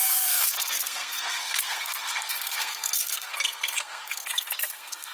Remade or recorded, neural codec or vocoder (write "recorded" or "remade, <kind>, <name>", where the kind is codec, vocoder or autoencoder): remade, codec, SNAC